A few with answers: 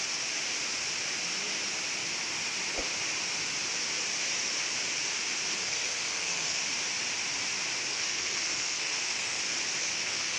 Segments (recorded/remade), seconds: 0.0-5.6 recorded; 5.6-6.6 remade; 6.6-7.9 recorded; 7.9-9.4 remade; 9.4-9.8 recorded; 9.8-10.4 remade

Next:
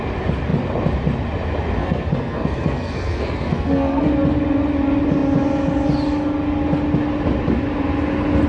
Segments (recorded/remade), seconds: 0.0-1.8 recorded; 1.8-4.1 remade; 4.1-8.5 recorded